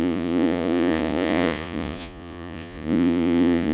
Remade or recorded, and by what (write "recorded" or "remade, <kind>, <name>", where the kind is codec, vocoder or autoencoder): remade, vocoder, Vocos